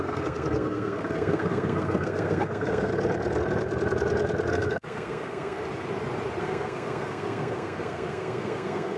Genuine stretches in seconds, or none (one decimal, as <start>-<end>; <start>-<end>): 2.9-4.5; 5.6-6.4